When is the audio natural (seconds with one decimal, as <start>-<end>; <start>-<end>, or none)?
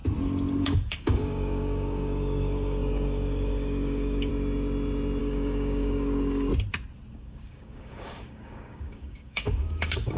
0.0-0.6; 4.3-5.2; 6.5-7.1